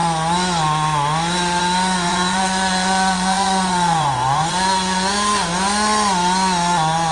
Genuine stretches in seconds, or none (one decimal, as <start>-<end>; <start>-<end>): 0.0-2.1; 5.1-7.1